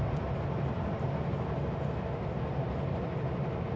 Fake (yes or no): no